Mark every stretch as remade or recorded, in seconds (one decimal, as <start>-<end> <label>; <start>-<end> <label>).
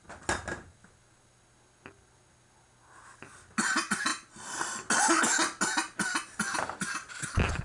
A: 0.0-6.5 recorded; 6.5-7.6 remade